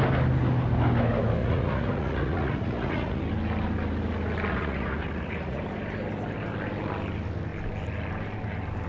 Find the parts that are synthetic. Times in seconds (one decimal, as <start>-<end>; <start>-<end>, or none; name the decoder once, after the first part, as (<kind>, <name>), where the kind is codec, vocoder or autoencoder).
1.4-3.2 (vocoder, Vocos); 4.5-5.6